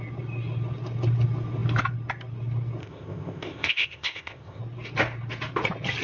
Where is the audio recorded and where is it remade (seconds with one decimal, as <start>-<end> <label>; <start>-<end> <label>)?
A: 0.0-2.8 recorded; 2.8-4.6 remade; 4.6-6.0 recorded